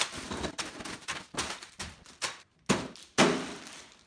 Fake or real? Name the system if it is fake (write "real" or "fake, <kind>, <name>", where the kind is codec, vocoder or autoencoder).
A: real